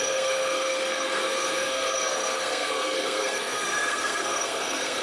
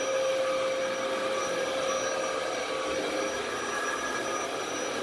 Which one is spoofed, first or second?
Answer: first